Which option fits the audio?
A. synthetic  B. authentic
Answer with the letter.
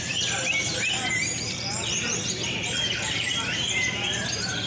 A